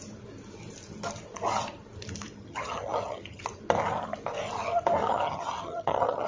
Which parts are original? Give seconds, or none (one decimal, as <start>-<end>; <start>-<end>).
0.0-2.4; 3.4-5.0